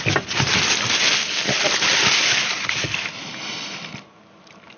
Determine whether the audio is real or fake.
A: real